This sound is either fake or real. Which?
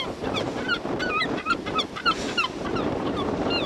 fake